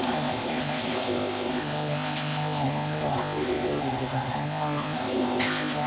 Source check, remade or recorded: remade